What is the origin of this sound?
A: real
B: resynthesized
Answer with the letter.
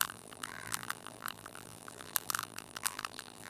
B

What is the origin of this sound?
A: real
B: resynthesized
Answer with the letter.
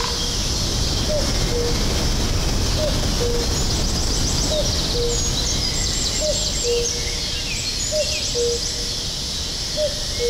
A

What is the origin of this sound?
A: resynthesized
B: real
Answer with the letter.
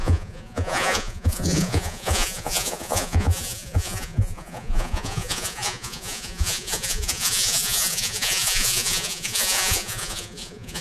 A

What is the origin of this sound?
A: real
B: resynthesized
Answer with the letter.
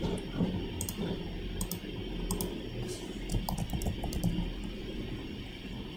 A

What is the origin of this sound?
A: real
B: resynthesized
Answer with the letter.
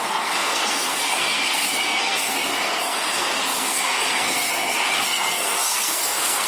B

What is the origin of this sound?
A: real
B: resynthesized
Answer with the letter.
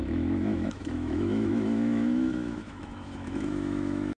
B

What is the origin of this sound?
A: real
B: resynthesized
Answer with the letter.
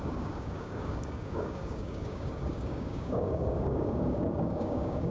B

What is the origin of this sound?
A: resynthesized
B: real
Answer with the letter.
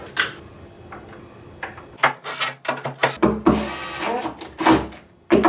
B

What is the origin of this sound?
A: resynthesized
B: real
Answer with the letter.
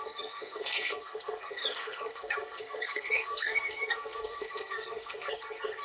A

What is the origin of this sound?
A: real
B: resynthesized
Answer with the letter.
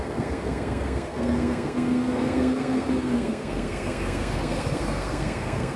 B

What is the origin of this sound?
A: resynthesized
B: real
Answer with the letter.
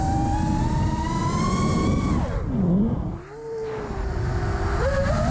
B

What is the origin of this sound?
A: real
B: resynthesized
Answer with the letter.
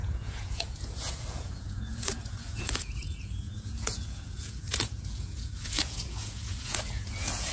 B